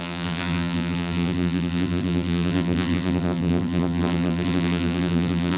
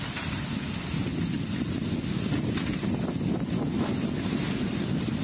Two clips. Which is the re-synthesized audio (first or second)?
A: first